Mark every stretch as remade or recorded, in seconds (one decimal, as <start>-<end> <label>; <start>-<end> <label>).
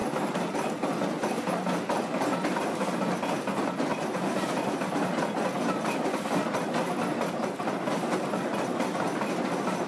0.0-9.9 recorded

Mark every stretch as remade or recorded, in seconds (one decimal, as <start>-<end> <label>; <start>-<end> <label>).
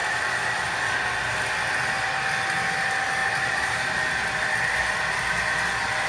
0.0-3.2 recorded; 3.2-4.1 remade; 4.1-6.1 recorded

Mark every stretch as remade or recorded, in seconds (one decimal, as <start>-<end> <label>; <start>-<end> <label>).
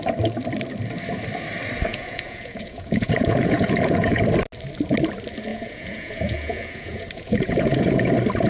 0.0-1.9 recorded; 1.9-4.2 remade; 4.2-5.5 recorded; 5.5-8.1 remade; 8.1-8.5 recorded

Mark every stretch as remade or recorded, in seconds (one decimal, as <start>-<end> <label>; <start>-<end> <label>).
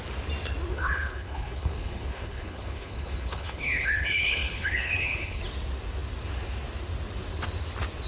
0.0-0.7 recorded; 0.7-5.4 remade; 5.4-8.1 recorded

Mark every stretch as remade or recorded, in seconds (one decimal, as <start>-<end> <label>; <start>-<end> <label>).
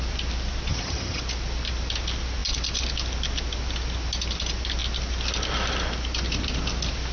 0.0-0.7 recorded; 0.7-1.2 remade; 1.2-7.1 recorded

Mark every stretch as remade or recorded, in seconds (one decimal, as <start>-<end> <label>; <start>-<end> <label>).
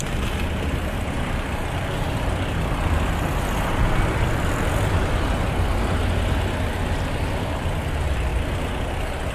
0.0-9.3 recorded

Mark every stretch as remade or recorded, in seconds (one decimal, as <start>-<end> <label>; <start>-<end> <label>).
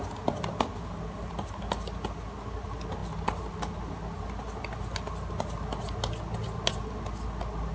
0.0-7.7 recorded